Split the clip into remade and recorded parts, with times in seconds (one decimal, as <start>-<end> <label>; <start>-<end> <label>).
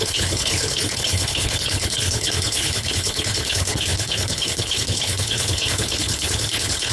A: 0.0-6.9 remade